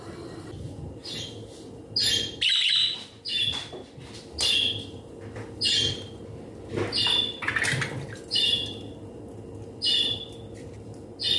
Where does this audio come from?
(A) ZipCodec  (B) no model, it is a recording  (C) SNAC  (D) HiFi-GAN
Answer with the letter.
B